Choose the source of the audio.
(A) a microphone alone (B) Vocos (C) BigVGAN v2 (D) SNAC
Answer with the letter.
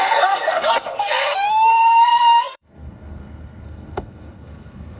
D